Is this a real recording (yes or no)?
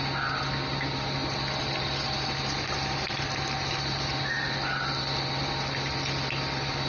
no